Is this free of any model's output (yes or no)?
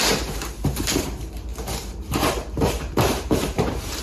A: no